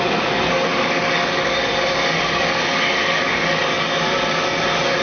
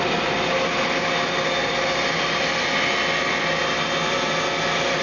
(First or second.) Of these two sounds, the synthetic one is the first